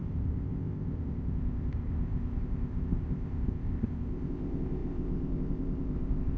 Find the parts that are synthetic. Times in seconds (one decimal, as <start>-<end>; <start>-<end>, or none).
0.0-6.4

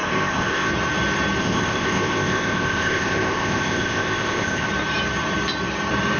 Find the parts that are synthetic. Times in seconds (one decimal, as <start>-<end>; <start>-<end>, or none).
0.0-0.7; 1.4-4.7

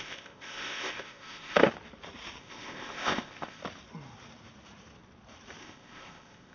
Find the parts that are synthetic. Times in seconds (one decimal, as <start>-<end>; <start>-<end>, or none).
0.0-1.6; 2.4-3.6; 5.6-6.5

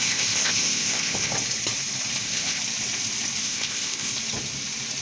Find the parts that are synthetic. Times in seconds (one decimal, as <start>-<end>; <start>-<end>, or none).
0.0-1.3; 2.2-2.6; 3.4-4.1

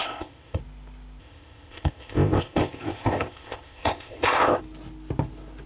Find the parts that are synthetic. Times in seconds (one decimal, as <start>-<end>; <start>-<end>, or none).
0.0-0.6; 1.2-4.6

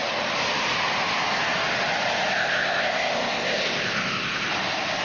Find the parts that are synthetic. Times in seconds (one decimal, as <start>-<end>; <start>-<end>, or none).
2.3-4.5

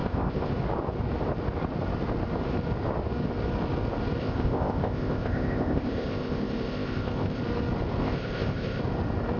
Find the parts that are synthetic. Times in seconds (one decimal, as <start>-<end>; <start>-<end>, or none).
0.0-0.5; 4.2-7.4; 8.0-8.8